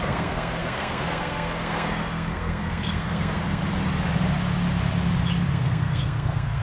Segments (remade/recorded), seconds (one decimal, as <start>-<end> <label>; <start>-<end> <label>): 0.0-3.6 remade; 3.6-5.5 recorded; 5.5-6.6 remade